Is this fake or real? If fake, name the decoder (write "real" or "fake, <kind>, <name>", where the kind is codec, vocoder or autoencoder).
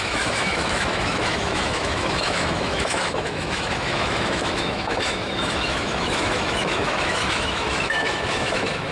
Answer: fake, autoencoder, DAC-VAE